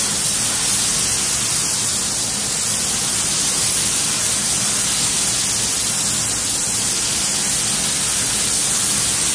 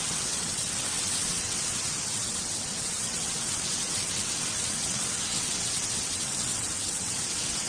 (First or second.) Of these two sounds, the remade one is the second